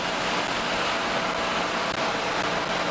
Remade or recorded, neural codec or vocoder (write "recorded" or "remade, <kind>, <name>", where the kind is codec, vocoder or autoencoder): recorded